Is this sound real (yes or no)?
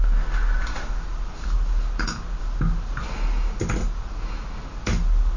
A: yes